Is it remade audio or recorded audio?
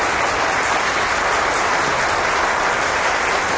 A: recorded